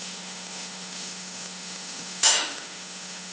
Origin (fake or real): fake